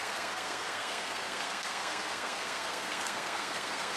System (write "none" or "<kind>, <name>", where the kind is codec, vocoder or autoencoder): codec, SNAC